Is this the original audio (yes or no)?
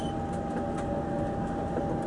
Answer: yes